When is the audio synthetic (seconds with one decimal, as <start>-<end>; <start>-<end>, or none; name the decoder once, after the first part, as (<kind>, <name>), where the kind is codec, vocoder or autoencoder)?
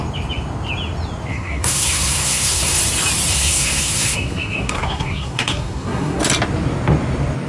1.3-2.8 (codec, SNAC); 3.3-6.2